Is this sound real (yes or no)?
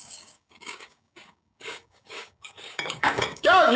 no